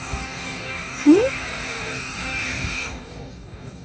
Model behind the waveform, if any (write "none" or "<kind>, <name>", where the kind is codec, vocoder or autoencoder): codec, DAC